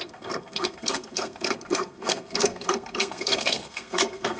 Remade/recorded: remade